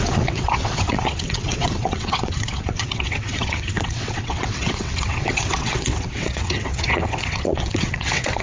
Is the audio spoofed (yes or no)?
yes